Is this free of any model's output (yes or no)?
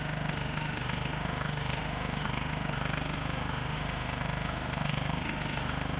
no